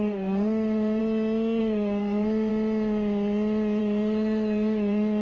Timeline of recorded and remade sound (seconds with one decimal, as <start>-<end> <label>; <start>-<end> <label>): 0.0-1.0 remade; 1.0-1.6 recorded; 1.6-2.5 remade; 2.5-3.8 recorded; 3.8-5.2 remade